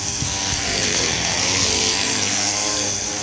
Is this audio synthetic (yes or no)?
yes